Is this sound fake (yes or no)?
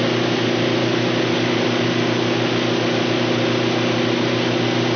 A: no